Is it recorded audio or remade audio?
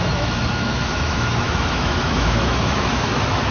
remade